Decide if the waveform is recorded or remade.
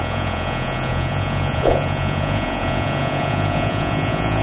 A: remade